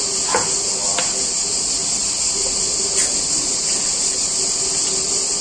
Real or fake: real